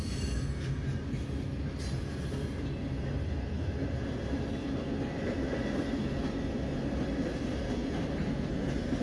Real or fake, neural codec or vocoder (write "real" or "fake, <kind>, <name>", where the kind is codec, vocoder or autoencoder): real